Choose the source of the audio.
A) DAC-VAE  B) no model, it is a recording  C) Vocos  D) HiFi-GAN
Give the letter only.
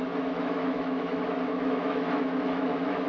A